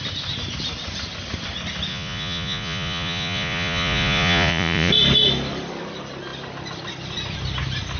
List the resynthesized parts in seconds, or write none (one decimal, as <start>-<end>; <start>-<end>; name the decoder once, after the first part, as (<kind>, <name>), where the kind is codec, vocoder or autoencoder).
1.9-4.9 (vocoder, Vocos)

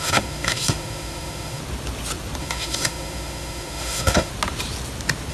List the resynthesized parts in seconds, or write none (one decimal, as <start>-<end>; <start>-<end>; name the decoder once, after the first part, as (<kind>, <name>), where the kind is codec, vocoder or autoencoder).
0.0-1.6 (autoencoder, DAC-VAE); 2.4-4.3

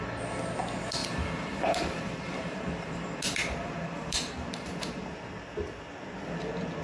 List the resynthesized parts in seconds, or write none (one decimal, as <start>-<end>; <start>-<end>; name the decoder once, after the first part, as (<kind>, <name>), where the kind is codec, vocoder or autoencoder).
1.0-5.1 (vocoder, BigVGAN v2)

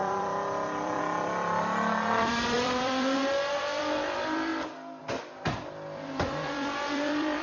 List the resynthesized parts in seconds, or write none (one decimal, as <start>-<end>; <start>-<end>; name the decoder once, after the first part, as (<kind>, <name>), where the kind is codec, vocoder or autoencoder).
0.0-3.2 (vocoder, BigVGAN v2); 3.8-4.5; 5.0-7.4